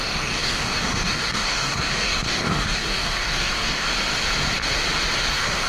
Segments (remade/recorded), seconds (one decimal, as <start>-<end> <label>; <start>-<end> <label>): 0.0-3.9 remade; 3.9-5.3 recorded; 5.3-5.7 remade